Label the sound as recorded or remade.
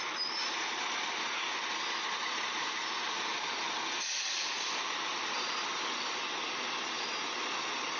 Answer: recorded